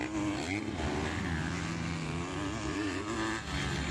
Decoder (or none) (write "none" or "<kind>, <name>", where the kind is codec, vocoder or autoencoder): none